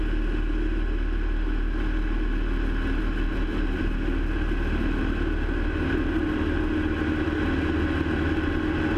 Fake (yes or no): no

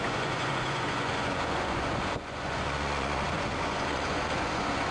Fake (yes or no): yes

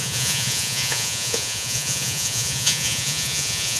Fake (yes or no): yes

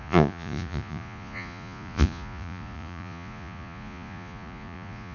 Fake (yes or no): yes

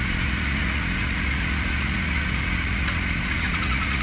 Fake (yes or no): yes